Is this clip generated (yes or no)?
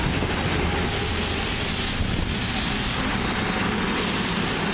no